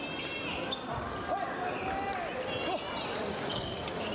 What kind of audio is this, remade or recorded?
recorded